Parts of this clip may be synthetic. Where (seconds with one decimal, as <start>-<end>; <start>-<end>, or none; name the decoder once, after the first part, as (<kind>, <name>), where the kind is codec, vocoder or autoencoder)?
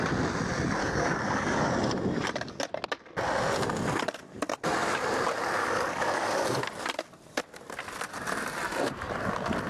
0.8-1.7 (codec, DAC); 5.6-6.6